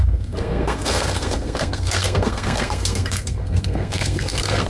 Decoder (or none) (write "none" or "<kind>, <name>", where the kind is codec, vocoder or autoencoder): codec, SNAC